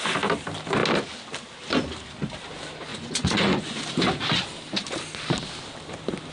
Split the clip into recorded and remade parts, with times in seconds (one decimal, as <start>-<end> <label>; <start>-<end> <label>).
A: 0.0-2.9 recorded; 2.9-3.8 remade; 3.8-6.3 recorded